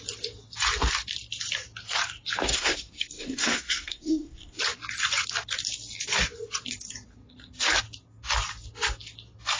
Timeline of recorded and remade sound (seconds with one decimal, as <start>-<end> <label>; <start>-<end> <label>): 0.0-2.5 recorded; 2.5-4.6 remade; 4.6-9.6 recorded